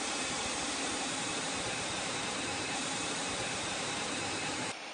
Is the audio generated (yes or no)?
yes